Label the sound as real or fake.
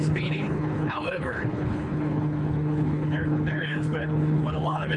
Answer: fake